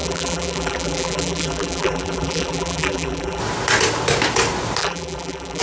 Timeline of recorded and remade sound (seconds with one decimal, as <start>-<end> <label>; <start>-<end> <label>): 0.0-3.4 remade; 3.4-4.8 recorded; 4.8-5.6 remade